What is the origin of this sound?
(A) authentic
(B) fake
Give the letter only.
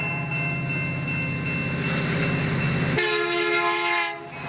A